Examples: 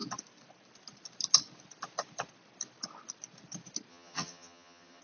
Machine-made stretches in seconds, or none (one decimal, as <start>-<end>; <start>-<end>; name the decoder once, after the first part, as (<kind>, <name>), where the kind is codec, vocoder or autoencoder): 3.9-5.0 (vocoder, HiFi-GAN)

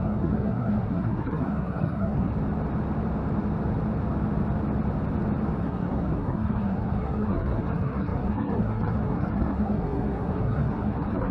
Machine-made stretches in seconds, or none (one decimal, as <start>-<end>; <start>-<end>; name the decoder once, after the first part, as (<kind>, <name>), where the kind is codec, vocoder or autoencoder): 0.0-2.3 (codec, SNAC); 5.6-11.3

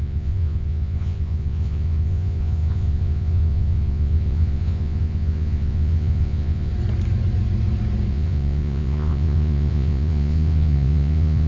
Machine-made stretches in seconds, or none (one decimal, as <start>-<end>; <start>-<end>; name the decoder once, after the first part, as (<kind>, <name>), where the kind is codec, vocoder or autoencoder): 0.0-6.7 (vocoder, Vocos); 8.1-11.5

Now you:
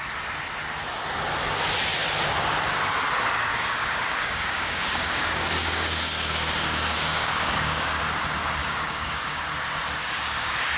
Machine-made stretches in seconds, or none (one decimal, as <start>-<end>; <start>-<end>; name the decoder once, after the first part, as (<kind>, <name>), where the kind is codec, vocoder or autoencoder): 3.5-8.0 (codec, DAC); 8.6-9.4; 10.0-10.8

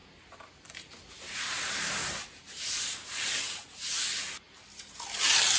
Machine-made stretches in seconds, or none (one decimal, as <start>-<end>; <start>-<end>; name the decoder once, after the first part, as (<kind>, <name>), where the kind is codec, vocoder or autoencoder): none